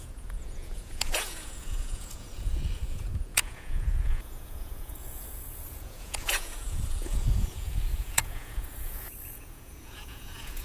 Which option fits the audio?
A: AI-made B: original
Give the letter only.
A